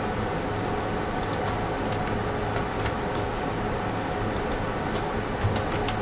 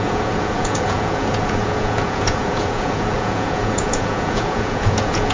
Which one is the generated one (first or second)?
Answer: second